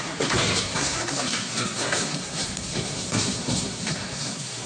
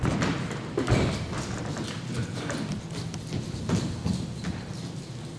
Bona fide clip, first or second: second